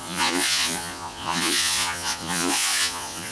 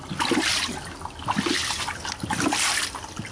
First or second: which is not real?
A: first